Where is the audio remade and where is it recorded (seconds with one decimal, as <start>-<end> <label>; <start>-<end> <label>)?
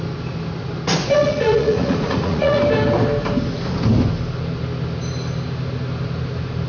0.0-1.0 recorded; 1.0-2.6 remade; 2.6-6.7 recorded